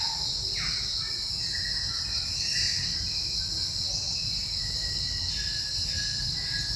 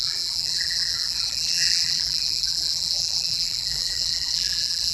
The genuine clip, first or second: first